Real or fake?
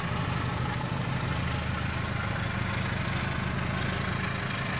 real